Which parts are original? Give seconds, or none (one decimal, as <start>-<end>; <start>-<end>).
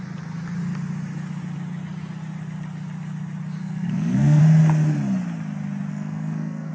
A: 0.0-3.6; 4.4-5.9